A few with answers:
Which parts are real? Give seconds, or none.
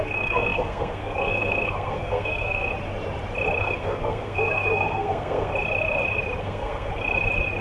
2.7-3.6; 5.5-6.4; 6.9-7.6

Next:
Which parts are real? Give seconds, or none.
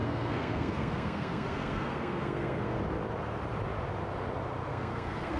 2.8-4.7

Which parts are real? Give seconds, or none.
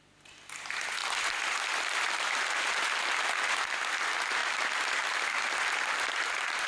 0.0-6.7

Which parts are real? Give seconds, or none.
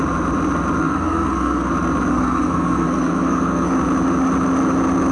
0.0-0.8; 1.7-2.1; 3.7-5.1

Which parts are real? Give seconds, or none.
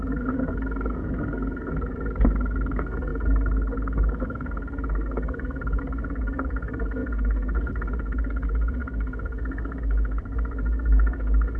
none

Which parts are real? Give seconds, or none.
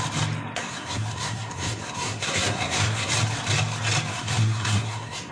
0.0-0.6; 3.1-4.1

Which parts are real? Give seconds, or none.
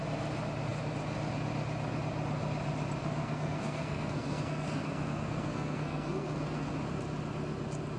0.0-3.0; 6.7-8.0